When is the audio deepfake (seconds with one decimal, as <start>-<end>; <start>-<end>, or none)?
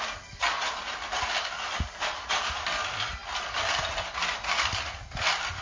none